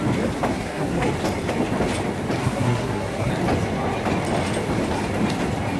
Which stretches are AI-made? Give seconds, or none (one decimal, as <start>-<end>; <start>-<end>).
0.5-1.1; 2.4-3.3